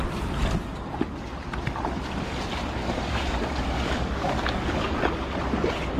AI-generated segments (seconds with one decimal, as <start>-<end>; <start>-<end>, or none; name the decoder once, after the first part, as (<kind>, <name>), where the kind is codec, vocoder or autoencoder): 2.8-5.4 (codec, DAC)